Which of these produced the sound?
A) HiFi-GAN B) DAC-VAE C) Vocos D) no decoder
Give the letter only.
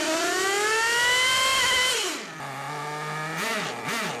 D